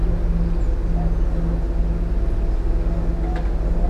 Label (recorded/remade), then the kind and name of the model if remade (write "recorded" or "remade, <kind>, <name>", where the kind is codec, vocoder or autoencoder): recorded